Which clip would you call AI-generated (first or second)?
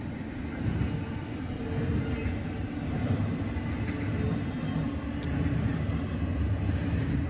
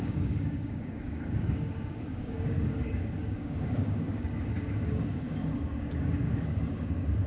second